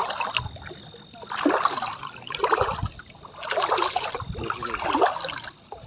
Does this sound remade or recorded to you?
recorded